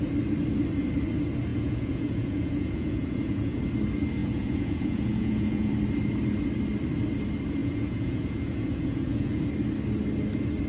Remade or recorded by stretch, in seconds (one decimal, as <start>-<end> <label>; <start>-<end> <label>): 0.0-1.5 recorded; 1.5-3.6 remade; 3.6-4.2 recorded; 4.2-5.7 remade; 5.7-7.6 recorded; 7.6-9.4 remade; 9.4-10.7 recorded